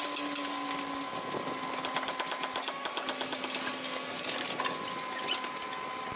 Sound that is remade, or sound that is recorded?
recorded